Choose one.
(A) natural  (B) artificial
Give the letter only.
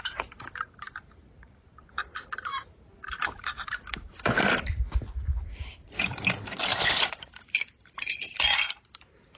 B